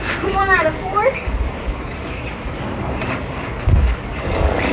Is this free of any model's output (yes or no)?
no